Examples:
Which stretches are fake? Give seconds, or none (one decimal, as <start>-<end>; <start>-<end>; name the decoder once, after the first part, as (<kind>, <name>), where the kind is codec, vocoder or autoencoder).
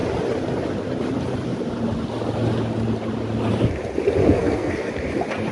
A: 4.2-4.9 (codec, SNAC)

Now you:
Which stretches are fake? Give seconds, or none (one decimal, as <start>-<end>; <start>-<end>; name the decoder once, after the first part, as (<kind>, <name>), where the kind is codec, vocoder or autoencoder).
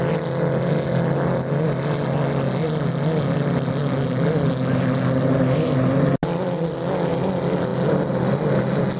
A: none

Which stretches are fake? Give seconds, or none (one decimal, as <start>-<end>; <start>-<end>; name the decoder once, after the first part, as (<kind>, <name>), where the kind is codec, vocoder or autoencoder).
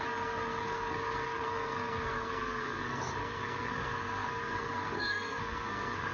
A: 0.0-6.1 (codec, SNAC)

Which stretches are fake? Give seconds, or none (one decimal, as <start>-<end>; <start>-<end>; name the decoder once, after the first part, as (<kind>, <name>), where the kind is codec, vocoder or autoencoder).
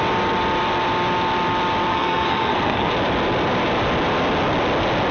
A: 1.9-2.9 (codec, SNAC)